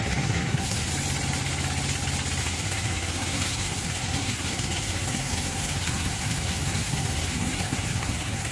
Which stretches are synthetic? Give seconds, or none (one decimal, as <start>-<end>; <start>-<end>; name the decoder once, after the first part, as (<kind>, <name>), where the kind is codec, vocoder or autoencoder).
0.0-0.9 (codec, SNAC); 2.4-8.5